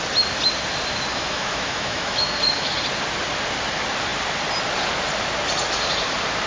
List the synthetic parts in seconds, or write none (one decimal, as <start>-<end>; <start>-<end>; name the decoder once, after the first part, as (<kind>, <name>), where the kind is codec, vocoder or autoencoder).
1.1-2.7 (autoencoder, DAC-VAE)